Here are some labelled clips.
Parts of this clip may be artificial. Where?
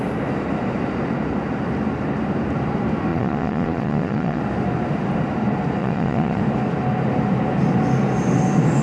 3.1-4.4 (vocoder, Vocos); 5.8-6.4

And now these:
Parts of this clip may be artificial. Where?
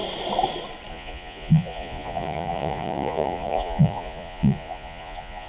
0.9-5.5 (vocoder, Vocos)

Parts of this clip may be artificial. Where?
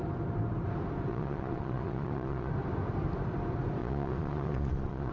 1.1-2.5 (vocoder, Vocos); 3.8-5.1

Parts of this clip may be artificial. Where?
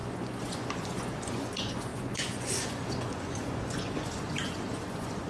0.0-5.3 (vocoder, Vocos)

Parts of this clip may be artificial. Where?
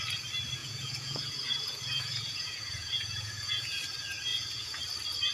0.6-3.8 (vocoder, Vocos); 4.3-4.8